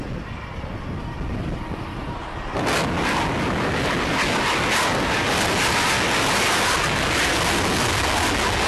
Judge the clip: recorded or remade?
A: recorded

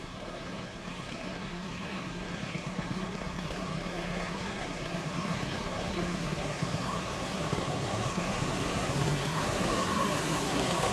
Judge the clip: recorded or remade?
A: remade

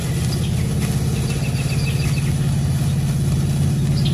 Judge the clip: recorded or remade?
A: recorded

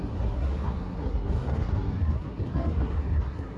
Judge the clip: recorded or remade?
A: remade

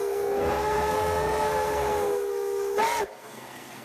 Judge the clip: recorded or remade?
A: remade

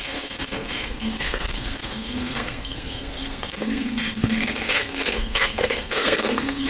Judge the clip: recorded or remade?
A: remade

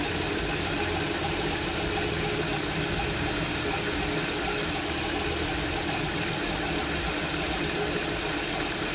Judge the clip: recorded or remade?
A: recorded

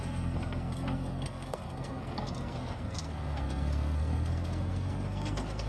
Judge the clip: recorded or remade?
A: remade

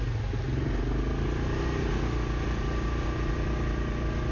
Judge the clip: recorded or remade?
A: recorded